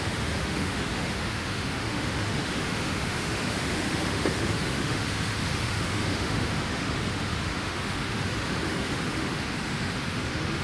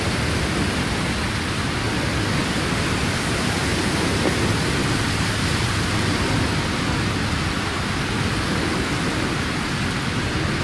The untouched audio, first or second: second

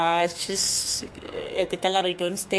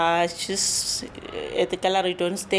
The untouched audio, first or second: second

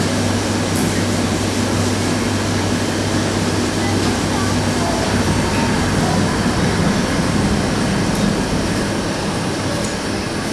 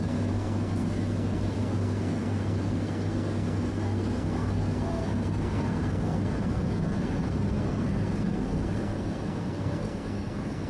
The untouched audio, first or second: first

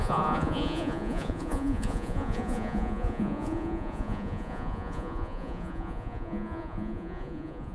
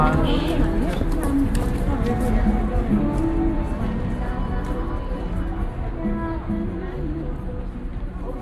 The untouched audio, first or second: second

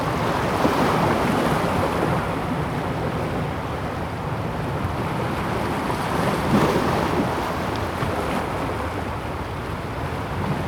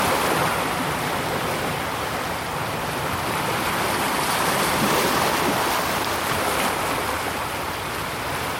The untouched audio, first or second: first